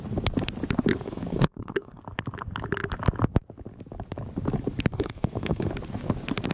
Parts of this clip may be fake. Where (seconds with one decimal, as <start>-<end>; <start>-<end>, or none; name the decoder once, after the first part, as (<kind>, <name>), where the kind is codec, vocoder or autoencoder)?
0.9-2.0 (codec, SNAC); 4.9-5.7